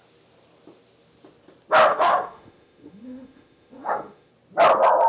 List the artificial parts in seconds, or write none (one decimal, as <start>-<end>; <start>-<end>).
1.9-4.3